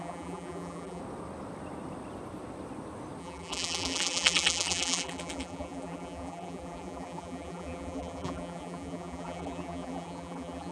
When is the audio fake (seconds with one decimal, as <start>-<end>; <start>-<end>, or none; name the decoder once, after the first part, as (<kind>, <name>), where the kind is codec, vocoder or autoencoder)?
0.0-1.0 (vocoder, BigVGAN v2); 3.2-10.7